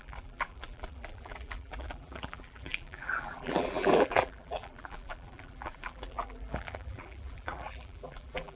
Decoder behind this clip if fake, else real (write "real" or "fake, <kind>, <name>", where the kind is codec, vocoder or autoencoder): fake, vocoder, BigVGAN v2